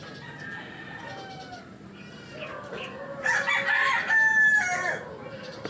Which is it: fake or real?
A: real